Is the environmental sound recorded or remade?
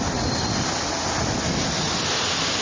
recorded